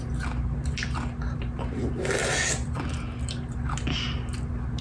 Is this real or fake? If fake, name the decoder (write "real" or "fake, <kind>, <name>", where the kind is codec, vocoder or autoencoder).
real